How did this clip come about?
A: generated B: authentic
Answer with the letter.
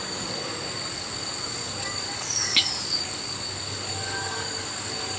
A